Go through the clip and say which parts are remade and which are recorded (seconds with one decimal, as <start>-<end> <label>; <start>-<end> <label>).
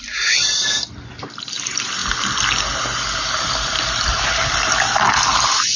0.0-5.8 recorded